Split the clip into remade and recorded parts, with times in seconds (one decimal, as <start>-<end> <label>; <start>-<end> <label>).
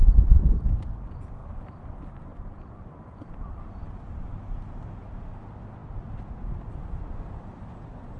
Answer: 0.0-0.9 remade; 0.9-1.4 recorded; 1.4-1.9 remade; 1.9-2.3 recorded; 2.3-4.3 remade; 4.3-8.2 recorded